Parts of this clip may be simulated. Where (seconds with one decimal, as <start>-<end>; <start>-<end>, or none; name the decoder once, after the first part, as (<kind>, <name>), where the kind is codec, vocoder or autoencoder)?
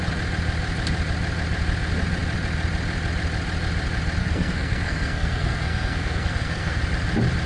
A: 4.2-6.8 (codec, SNAC)